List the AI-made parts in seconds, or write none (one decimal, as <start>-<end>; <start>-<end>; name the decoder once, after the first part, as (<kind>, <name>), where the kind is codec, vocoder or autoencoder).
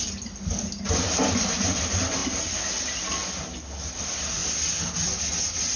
none